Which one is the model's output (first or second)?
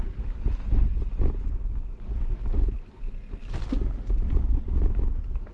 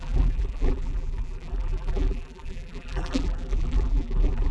second